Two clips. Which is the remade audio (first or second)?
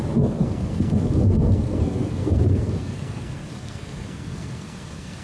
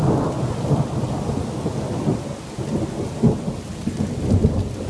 first